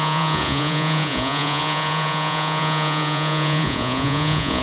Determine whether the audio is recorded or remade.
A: remade